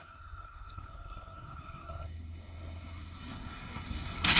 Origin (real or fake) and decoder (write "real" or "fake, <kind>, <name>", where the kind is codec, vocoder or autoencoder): fake, codec, SNAC